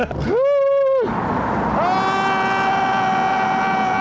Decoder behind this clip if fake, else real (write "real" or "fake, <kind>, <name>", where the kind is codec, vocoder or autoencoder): real